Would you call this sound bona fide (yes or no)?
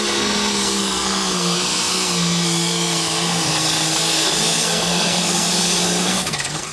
no